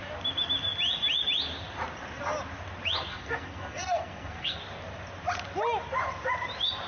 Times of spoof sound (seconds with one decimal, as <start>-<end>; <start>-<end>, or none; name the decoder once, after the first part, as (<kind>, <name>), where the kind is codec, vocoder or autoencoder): 3.1-4.6 (codec, SNAC)